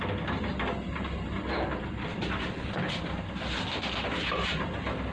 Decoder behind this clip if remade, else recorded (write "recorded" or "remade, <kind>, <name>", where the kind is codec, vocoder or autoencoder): recorded